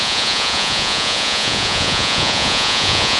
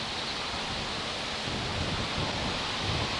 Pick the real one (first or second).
second